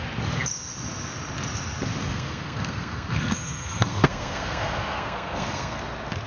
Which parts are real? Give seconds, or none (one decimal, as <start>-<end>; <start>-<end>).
0.0-2.0; 5.8-6.3